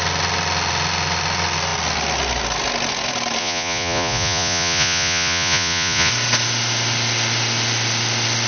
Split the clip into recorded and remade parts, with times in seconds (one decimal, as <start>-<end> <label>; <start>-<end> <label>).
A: 0.0-3.4 recorded; 3.4-6.1 remade; 6.1-8.5 recorded